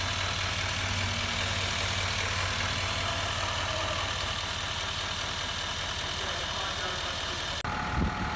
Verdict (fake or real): real